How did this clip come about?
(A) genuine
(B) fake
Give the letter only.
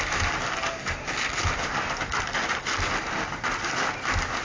A